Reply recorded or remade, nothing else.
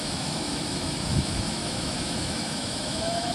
remade